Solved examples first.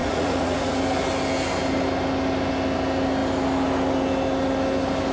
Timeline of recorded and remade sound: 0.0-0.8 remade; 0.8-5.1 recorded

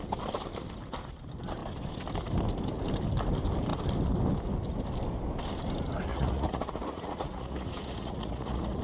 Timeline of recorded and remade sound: 0.0-6.1 recorded; 6.1-8.8 remade

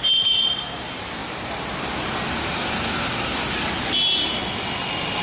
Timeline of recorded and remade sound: 0.0-5.2 recorded

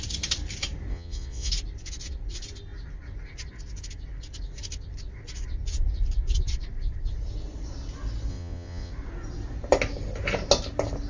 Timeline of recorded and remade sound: 0.0-0.9 recorded; 0.9-1.5 remade; 1.5-8.3 recorded; 8.3-8.9 remade; 8.9-11.1 recorded

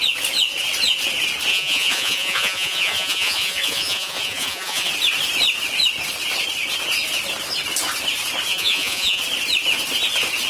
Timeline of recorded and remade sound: 0.0-1.5 recorded; 1.5-4.9 remade; 4.9-8.5 recorded; 8.5-9.2 remade; 9.2-10.5 recorded